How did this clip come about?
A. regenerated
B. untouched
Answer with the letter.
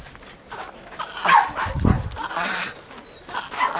B